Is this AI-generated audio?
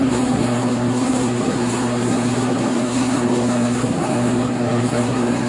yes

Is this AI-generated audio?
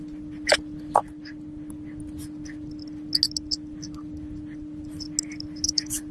no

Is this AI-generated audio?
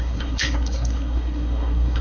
yes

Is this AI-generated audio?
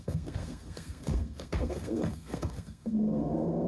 yes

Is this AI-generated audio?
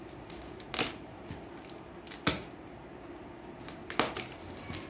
no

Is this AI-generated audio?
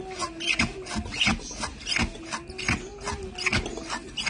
no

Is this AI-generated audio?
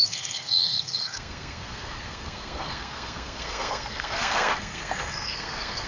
yes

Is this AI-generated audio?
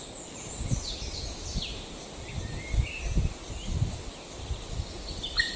no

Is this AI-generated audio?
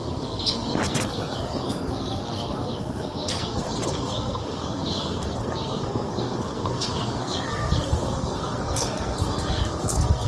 yes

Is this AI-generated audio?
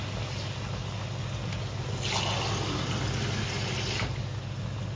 no